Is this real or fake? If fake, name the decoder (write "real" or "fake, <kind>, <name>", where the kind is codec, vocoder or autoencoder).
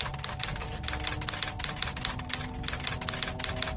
real